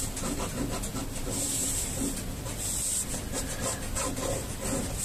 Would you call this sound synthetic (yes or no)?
no